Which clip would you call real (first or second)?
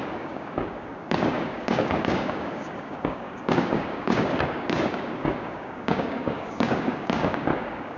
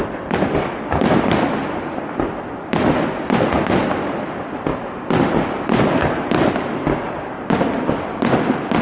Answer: second